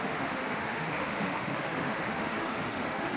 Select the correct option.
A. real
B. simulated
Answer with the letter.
B